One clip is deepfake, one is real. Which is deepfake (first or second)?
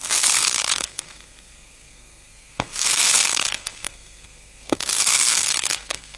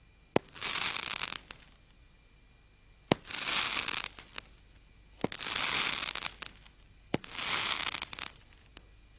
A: first